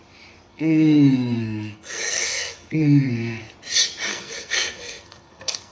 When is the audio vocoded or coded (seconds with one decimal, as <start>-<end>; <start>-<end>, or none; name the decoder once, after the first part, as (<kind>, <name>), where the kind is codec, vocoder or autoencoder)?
0.5-3.4 (codec, SNAC); 4.1-5.7